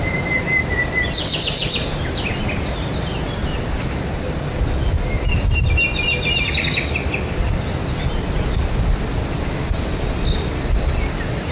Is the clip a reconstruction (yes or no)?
no